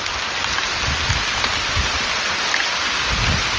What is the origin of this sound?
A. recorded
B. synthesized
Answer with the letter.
A